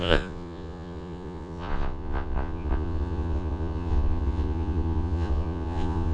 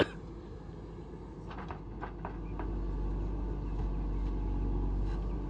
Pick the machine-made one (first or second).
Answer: first